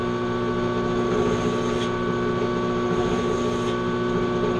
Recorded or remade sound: recorded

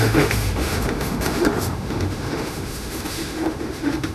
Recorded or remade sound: remade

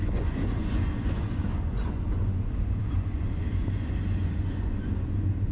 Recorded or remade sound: remade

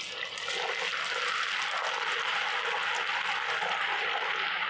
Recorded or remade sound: recorded